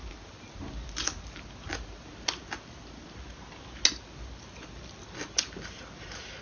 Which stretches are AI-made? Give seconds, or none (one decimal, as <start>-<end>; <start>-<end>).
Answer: none